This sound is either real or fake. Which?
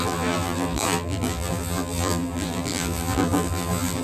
fake